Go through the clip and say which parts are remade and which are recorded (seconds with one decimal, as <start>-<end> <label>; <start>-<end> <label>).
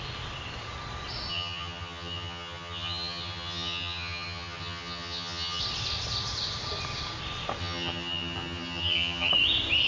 0.0-1.3 recorded; 1.3-5.6 remade; 5.6-7.6 recorded; 7.6-9.3 remade; 9.3-9.9 recorded